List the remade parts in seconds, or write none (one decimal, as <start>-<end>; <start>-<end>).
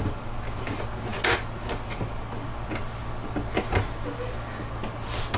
none